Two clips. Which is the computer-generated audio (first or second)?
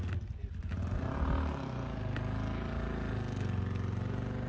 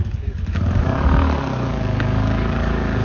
second